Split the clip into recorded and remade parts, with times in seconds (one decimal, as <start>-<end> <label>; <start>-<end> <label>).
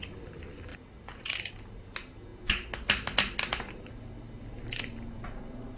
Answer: 0.0-0.7 recorded; 0.7-1.5 remade; 1.5-5.8 recorded